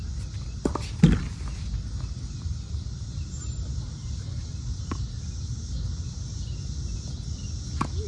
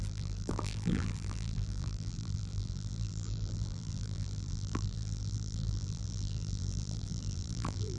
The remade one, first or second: second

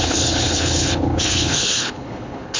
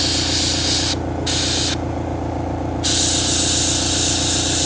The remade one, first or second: first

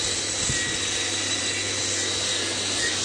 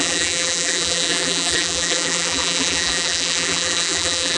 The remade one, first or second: second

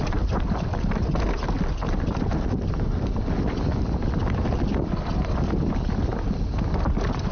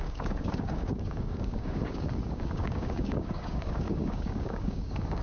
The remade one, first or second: second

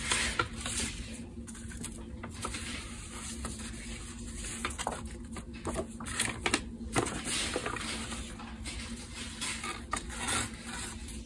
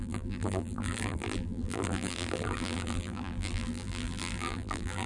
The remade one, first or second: second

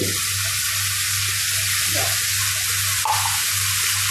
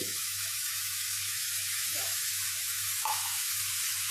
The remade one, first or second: second